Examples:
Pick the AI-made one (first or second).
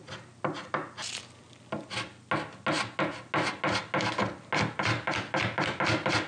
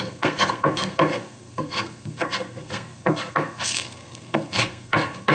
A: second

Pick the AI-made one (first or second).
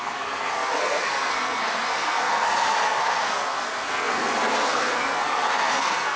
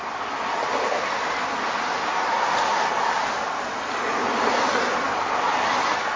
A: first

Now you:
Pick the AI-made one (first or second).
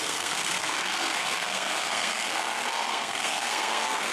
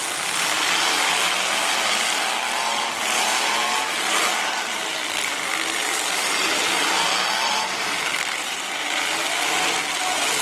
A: first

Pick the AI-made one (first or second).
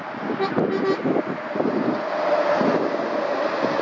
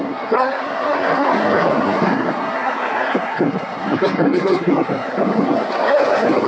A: second